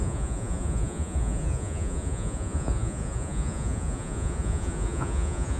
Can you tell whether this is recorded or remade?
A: remade